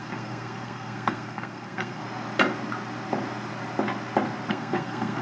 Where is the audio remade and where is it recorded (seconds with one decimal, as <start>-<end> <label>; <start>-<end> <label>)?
0.0-2.0 remade; 2.0-4.5 recorded; 4.5-5.2 remade